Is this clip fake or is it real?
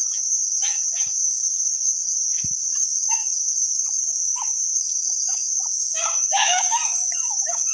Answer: fake